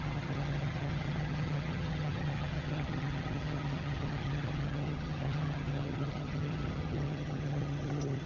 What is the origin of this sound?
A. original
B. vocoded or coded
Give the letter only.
B